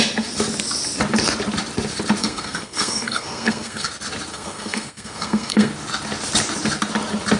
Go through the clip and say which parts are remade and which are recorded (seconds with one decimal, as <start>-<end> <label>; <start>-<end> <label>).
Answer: 0.0-2.2 recorded; 2.2-3.9 remade; 3.9-4.3 recorded; 4.3-5.7 remade; 5.7-7.4 recorded